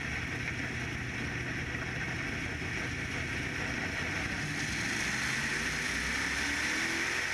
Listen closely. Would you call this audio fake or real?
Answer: real